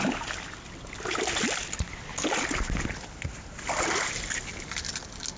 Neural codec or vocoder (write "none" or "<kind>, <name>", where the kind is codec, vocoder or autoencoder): none